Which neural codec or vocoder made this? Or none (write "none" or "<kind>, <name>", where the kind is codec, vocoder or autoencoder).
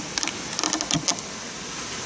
none